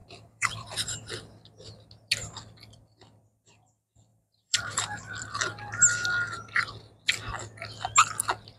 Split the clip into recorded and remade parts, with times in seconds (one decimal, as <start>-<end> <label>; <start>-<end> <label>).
0.0-1.1 remade; 1.1-4.1 recorded; 4.1-5.1 remade; 5.1-8.6 recorded